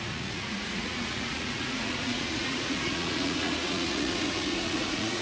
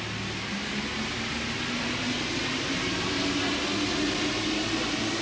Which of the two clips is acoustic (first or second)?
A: second